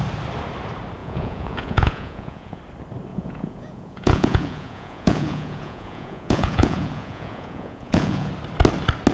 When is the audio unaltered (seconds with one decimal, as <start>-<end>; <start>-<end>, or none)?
0.0-1.0; 2.6-3.1; 8.3-9.1